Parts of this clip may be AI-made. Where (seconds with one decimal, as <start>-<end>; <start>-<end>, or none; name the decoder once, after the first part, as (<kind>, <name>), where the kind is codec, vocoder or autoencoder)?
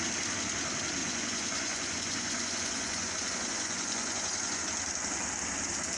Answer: 1.0-4.6 (vocoder, Vocos)